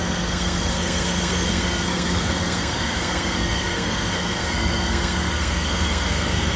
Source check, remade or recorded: remade